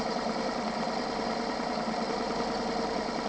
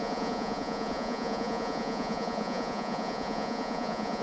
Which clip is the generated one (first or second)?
second